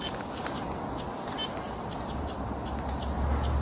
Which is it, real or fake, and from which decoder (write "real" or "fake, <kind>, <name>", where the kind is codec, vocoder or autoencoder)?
real